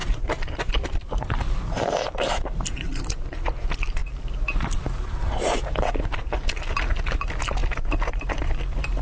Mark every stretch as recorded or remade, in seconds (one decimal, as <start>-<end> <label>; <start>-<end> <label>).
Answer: 0.0-0.7 remade; 0.7-7.6 recorded; 7.6-8.6 remade; 8.6-9.0 recorded